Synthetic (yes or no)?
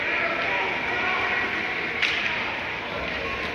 no